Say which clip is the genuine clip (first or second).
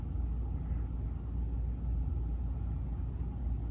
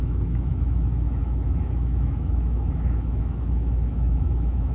first